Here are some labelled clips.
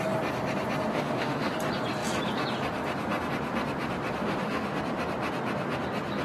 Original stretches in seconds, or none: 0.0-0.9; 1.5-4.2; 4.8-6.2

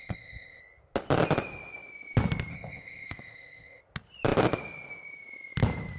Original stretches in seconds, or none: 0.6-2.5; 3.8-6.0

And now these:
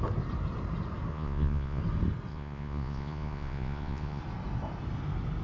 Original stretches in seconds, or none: 0.0-1.1; 1.8-2.3; 4.2-5.4

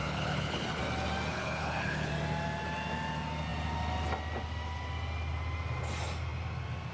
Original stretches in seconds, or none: 0.8-1.3; 2.1-6.9

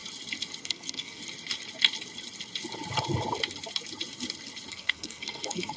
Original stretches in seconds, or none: 0.0-0.6; 1.2-4.7